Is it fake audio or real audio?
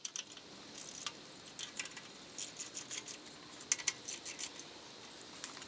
real